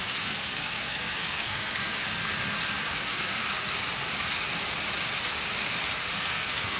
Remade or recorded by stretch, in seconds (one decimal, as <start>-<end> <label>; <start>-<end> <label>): 0.0-1.9 remade; 1.9-2.8 recorded; 2.8-3.4 remade; 3.4-6.2 recorded; 6.2-6.8 remade